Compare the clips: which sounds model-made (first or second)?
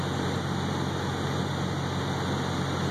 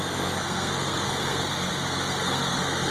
second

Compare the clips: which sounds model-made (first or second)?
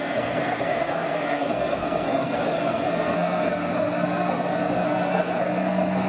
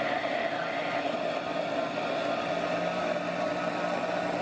first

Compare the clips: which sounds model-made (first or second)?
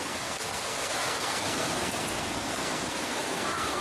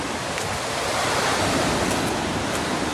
first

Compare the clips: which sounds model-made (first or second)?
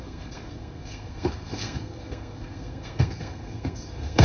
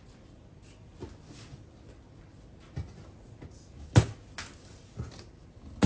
first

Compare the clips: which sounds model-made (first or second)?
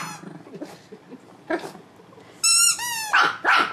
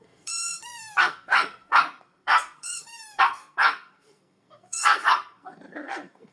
second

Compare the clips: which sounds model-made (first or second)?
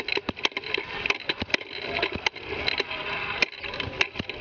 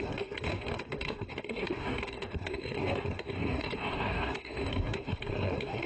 second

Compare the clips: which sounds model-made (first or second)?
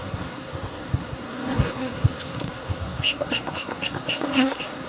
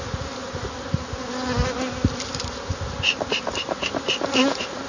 first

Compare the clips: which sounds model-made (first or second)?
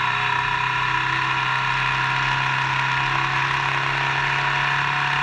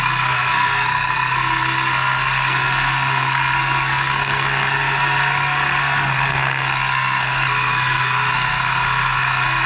second